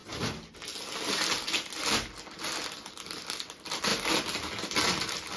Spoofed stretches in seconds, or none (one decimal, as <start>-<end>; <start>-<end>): none